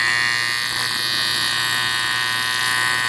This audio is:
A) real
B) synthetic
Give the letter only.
A